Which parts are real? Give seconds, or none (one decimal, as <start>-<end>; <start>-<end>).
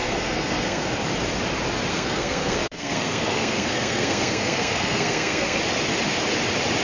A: 0.9-1.9; 5.6-6.8